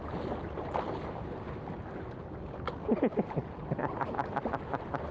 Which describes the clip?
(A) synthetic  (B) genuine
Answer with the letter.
B